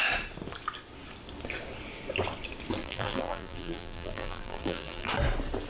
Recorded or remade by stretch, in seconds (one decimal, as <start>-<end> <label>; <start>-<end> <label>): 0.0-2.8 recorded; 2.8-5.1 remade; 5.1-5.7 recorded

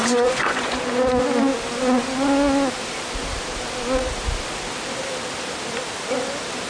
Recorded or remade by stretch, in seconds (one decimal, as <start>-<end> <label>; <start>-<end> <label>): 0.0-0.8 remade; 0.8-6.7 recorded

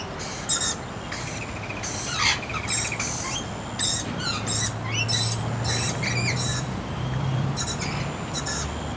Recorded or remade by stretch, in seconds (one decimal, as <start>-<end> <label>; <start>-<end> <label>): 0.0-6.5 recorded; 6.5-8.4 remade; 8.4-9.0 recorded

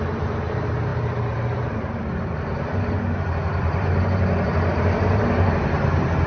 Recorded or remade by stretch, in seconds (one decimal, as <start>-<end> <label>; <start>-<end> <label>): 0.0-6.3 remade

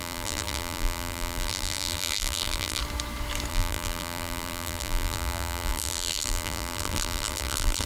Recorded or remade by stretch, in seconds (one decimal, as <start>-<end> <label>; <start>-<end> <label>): 0.0-2.8 remade; 2.8-3.5 recorded; 3.5-7.9 remade

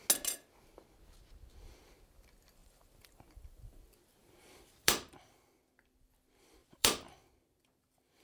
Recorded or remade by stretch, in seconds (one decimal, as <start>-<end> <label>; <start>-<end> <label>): 0.0-2.6 recorded; 2.6-3.8 remade; 3.8-4.2 recorded; 4.2-5.6 remade; 5.6-6.6 recorded; 6.6-7.2 remade; 7.2-8.2 recorded

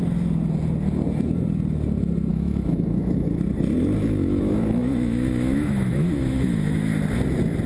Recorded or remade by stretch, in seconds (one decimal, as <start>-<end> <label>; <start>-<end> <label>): 0.0-2.3 recorded; 2.3-3.4 remade; 3.4-4.0 recorded; 4.0-6.9 remade; 6.9-7.7 recorded

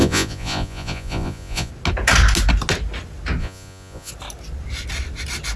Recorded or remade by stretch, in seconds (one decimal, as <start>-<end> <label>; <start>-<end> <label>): 0.0-1.7 remade; 1.7-3.4 recorded; 3.4-4.1 remade; 4.1-5.6 recorded